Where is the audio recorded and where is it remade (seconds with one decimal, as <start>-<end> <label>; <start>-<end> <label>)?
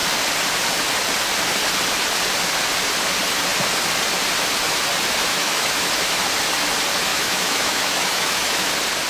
0.0-5.3 recorded; 5.3-5.9 remade; 5.9-7.1 recorded; 7.1-8.7 remade; 8.7-9.1 recorded